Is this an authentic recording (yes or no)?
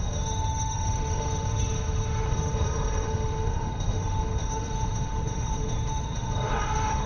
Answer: no